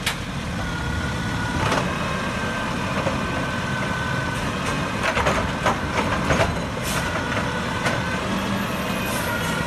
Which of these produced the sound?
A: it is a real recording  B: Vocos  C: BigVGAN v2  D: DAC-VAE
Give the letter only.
A